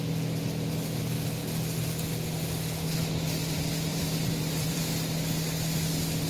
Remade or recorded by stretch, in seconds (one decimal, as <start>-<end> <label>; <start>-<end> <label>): 0.0-3.9 recorded; 3.9-4.8 remade; 4.8-6.3 recorded